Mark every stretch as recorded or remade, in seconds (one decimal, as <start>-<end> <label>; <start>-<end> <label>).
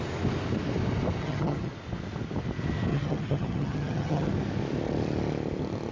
0.0-1.2 recorded; 1.2-1.7 remade; 1.7-2.9 recorded; 2.9-4.3 remade; 4.3-5.9 recorded